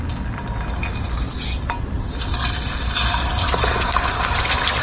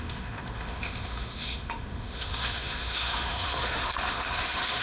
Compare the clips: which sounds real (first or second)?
first